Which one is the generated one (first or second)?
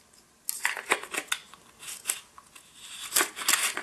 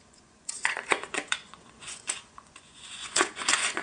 second